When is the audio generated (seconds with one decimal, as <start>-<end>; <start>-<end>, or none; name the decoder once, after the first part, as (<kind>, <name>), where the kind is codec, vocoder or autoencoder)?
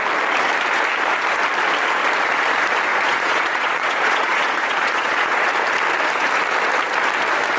2.9-5.5 (vocoder, Vocos)